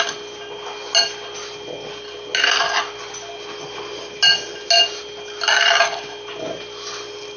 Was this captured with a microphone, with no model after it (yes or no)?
yes